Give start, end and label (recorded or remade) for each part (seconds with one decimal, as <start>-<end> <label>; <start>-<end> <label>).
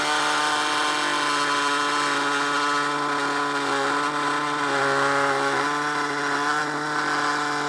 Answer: 0.0-7.7 recorded